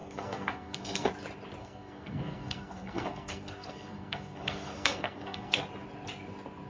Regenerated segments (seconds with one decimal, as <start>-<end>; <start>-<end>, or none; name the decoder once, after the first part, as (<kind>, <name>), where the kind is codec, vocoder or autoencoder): 0.0-1.1 (codec, SNAC); 1.6-5.6